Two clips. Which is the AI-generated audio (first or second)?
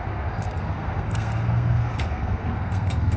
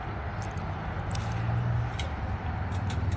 first